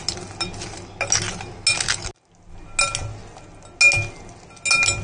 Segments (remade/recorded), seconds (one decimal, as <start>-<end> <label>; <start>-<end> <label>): 0.0-5.0 recorded